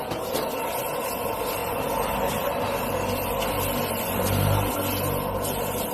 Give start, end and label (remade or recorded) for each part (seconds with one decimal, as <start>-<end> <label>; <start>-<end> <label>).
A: 0.0-5.9 recorded